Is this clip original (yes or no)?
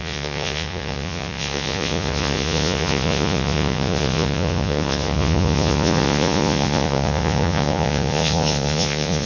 no